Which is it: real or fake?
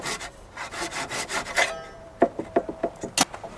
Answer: real